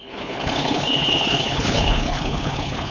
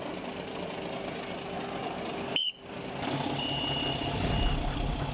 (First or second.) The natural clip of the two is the second